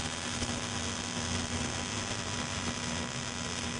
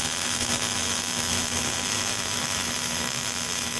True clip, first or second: first